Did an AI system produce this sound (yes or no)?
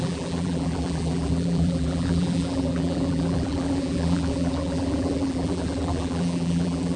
yes